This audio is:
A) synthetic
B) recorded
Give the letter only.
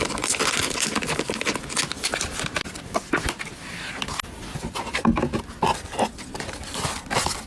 B